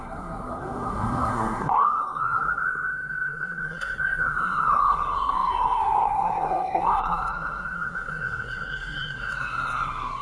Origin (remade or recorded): remade